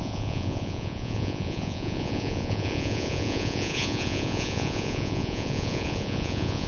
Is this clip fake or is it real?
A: fake